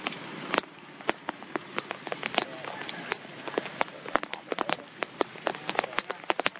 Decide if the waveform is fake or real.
real